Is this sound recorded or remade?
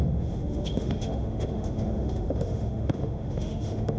remade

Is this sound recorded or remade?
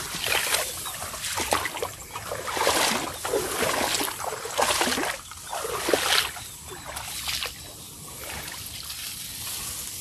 recorded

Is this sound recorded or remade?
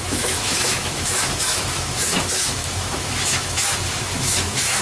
remade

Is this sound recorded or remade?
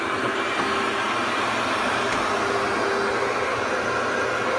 recorded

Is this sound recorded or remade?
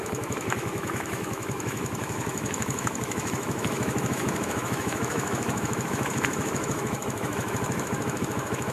remade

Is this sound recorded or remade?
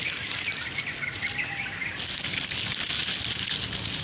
recorded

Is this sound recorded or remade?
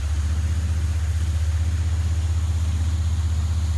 recorded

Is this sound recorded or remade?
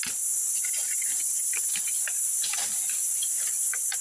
recorded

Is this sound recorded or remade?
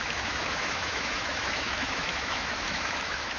remade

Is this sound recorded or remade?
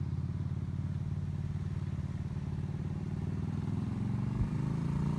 recorded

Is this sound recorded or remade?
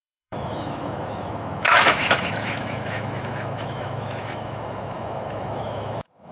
remade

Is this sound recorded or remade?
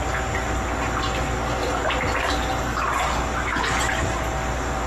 recorded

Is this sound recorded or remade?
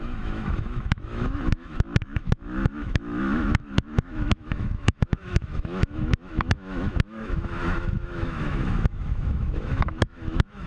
remade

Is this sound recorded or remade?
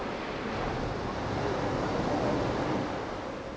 recorded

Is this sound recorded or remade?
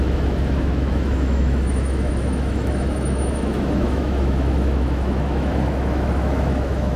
remade